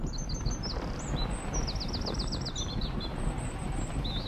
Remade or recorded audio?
recorded